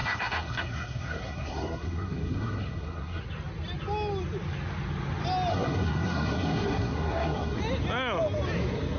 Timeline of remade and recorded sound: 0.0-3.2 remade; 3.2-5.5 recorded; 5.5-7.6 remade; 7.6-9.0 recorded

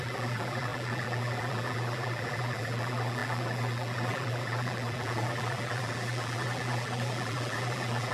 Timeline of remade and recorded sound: 0.0-8.1 remade